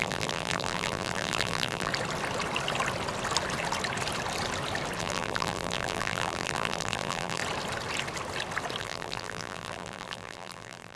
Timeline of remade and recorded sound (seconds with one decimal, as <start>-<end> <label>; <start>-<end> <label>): 0.0-1.9 remade; 1.9-5.0 recorded; 5.0-7.4 remade; 7.4-8.8 recorded; 8.8-11.0 remade